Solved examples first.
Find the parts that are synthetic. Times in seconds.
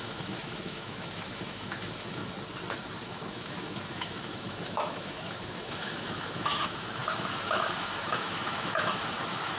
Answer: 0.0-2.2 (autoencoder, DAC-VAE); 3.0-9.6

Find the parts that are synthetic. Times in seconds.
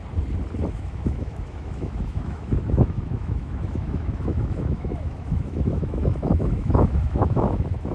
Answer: 0.7-7.9 (autoencoder, DAC-VAE)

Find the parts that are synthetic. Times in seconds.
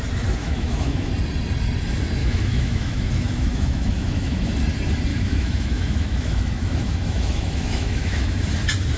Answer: 0.4-1.1 (autoencoder, DAC-VAE); 2.2-4.5; 5.1-8.4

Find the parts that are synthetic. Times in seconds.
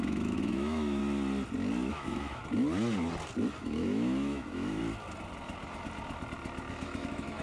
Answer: 0.0-1.0 (autoencoder, DAC-VAE); 1.9-2.4; 3.6-4.8; 6.7-7.4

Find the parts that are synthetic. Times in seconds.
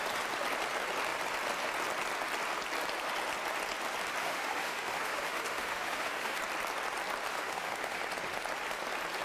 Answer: 4.2-6.4 (autoencoder, DAC-VAE); 7.3-8.0